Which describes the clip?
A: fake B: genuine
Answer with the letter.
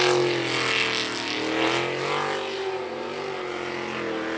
B